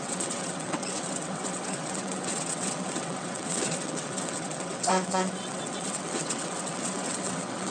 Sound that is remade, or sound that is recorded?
remade